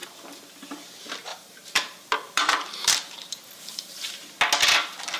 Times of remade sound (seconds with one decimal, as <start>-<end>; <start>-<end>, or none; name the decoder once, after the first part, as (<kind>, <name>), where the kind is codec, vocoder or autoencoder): 1.3-4.4 (vocoder, BigVGAN v2)